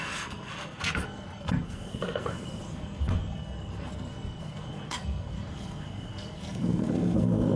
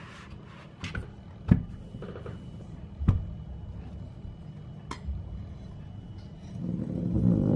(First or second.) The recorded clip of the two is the second